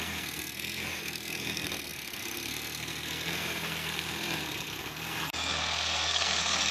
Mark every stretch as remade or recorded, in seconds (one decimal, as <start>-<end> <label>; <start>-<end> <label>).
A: 0.0-6.7 remade